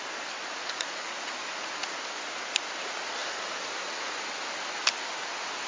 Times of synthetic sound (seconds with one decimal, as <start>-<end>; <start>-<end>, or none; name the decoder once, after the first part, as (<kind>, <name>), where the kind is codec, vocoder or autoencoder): 0.6-2.0 (vocoder, Vocos)